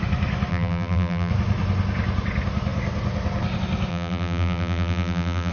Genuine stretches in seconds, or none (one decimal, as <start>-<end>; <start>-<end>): 0.0-0.5; 1.3-3.9